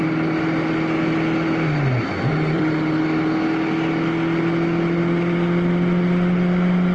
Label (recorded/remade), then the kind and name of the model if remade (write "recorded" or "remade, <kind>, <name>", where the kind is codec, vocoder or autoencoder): recorded